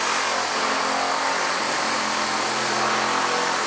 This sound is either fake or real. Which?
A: real